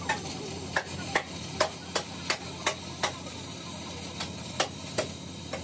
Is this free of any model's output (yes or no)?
yes